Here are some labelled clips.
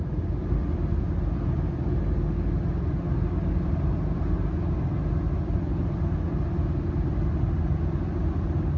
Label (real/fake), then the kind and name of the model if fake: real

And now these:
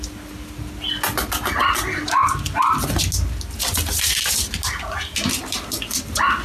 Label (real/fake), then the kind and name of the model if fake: real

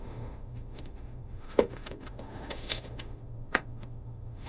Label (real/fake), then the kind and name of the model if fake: fake, autoencoder, DAC-VAE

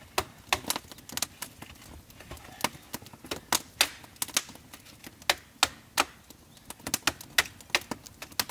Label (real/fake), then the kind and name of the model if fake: real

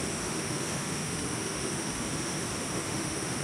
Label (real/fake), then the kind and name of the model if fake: fake, autoencoder, DAC-VAE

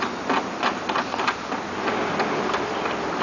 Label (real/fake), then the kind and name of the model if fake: real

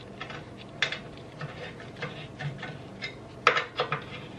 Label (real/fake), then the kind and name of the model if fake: real